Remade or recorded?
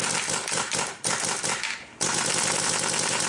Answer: recorded